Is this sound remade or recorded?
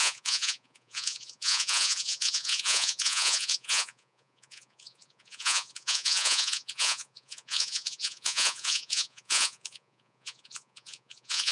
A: remade